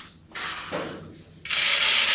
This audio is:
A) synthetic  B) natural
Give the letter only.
B